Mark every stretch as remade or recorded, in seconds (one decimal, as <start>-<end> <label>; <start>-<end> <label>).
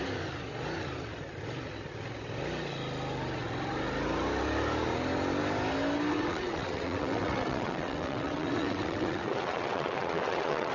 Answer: 0.0-6.1 recorded; 6.1-10.7 remade